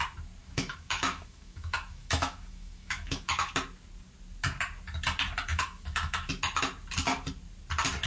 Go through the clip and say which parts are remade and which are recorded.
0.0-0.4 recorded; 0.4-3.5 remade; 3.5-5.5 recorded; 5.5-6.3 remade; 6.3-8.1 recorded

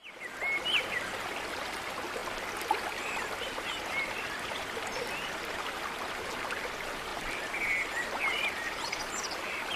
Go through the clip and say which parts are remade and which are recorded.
0.0-9.8 recorded

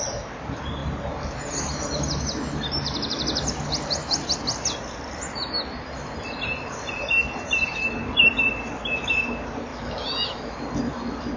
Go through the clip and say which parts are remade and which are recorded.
0.0-9.7 recorded; 9.7-10.6 remade; 10.6-11.4 recorded

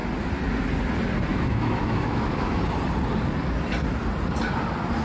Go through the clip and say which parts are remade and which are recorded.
0.0-1.3 recorded; 1.3-2.6 remade; 2.6-5.0 recorded

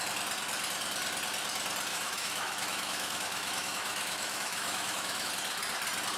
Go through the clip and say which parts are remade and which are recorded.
0.0-1.9 recorded; 1.9-5.3 remade; 5.3-6.2 recorded

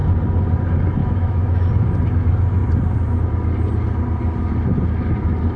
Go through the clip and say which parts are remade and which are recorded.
0.0-1.0 recorded; 1.0-1.7 remade; 1.7-5.6 recorded